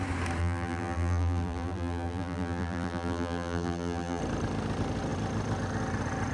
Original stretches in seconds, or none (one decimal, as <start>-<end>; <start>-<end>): 0.0-0.4; 4.2-6.3